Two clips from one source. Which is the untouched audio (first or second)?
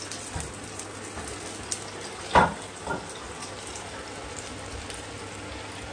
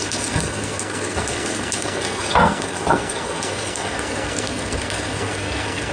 first